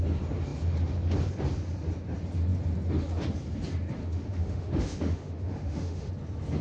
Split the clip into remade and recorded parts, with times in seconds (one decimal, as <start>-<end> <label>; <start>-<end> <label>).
0.0-4.0 recorded; 4.0-6.1 remade; 6.1-6.6 recorded

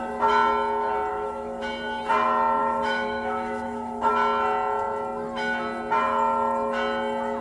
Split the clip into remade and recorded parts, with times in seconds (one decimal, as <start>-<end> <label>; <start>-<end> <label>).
0.0-1.1 recorded; 1.1-1.6 remade; 1.6-2.6 recorded; 2.6-4.1 remade; 4.1-7.4 recorded

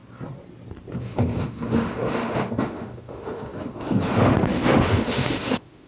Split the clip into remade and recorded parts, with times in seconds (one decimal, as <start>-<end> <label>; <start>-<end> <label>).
0.0-1.0 recorded; 1.0-5.9 remade

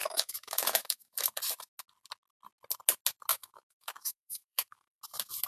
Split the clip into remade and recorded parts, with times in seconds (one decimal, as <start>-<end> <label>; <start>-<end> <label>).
0.0-1.4 remade; 1.4-3.3 recorded; 3.3-5.0 remade; 5.0-5.5 recorded

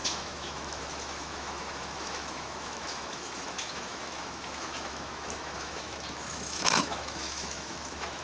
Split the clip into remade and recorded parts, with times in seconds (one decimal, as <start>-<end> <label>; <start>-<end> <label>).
0.0-8.2 remade

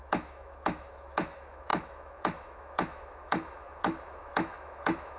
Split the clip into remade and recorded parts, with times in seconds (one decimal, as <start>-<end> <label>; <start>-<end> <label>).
0.0-5.2 remade